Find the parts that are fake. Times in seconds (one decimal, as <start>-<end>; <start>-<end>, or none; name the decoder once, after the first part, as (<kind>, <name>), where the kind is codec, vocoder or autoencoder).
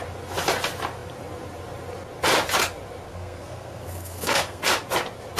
3.1-4.6 (codec, SNAC)